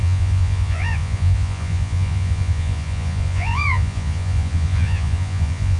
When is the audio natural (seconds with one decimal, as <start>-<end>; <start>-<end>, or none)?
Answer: none